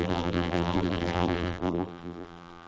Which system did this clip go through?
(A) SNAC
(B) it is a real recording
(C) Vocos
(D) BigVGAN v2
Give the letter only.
D